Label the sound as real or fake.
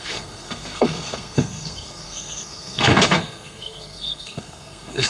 fake